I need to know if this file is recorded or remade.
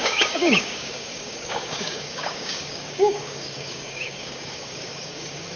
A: remade